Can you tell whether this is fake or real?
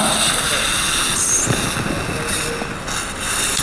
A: real